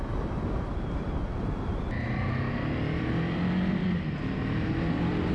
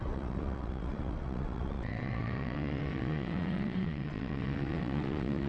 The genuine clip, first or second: first